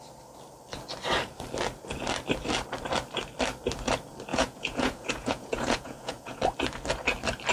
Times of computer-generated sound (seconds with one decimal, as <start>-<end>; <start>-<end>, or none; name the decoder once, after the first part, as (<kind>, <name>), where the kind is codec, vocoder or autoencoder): 4.3-6.4 (vocoder, Vocos)

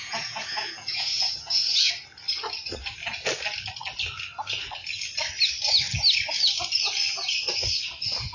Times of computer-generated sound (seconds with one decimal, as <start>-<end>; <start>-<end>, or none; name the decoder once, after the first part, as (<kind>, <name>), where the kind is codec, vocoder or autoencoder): 0.0-1.9 (vocoder, Vocos)